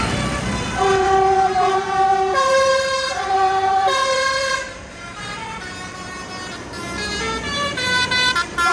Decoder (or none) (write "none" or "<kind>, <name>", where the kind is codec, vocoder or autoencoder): vocoder, BigVGAN v2